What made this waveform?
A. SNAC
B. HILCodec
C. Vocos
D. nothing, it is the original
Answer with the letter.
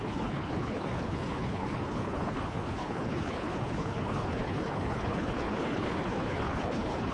B